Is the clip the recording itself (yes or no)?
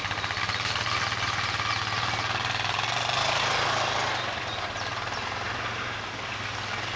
yes